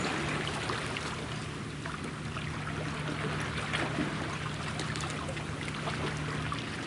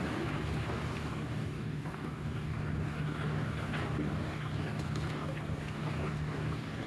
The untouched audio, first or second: first